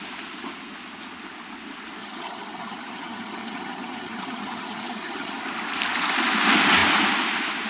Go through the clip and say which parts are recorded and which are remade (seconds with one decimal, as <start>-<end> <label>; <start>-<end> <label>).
0.0-2.0 recorded; 2.0-5.4 remade; 5.4-7.7 recorded